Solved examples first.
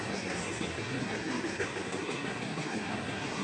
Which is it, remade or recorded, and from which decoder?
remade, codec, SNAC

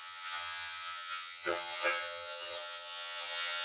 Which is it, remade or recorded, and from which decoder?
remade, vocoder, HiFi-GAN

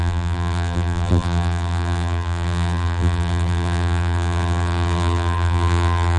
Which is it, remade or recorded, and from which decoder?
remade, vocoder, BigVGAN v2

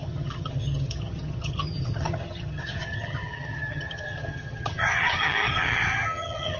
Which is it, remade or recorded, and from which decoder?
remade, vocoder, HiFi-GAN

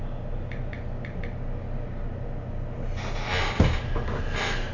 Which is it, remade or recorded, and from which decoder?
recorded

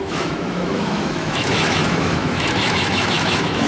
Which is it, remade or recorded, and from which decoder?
remade, autoencoder, DAC-VAE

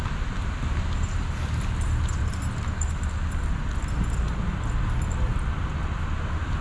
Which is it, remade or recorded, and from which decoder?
recorded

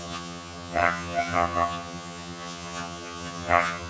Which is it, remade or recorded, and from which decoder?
remade, vocoder, HiFi-GAN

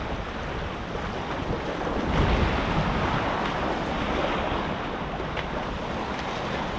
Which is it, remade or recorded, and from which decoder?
recorded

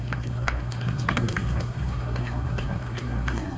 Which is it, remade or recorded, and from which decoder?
remade, codec, SNAC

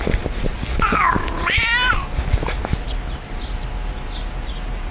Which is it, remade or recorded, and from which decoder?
recorded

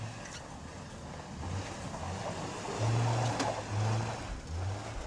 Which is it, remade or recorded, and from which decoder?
recorded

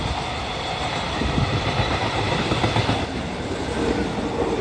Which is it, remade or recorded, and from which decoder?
remade, vocoder, BigVGAN v2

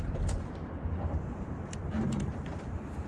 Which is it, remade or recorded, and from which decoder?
remade, vocoder, BigVGAN v2